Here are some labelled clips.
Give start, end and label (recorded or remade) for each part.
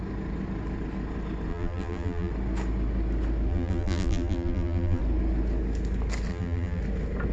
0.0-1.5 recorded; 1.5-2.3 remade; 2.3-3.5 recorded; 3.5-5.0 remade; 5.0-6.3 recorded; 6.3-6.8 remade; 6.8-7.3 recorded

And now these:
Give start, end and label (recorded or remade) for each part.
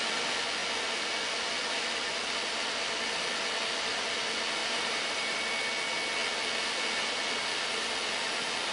0.0-4.6 recorded; 4.6-5.4 remade; 5.4-8.7 recorded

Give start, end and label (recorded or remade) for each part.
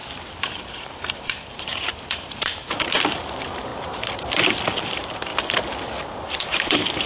0.0-3.7 remade; 3.7-4.8 recorded; 4.8-5.3 remade; 5.3-6.0 recorded; 6.0-7.1 remade